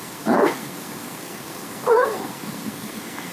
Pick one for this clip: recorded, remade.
remade